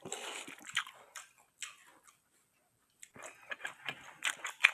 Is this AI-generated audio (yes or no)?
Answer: no